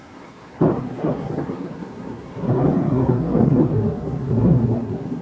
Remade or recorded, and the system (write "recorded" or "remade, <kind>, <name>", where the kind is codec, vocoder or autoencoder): remade, codec, SNAC